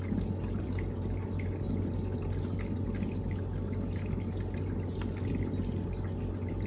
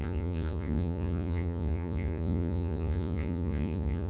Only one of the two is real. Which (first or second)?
first